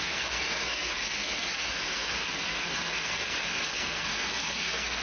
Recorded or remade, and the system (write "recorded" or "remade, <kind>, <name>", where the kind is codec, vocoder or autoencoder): remade, codec, SNAC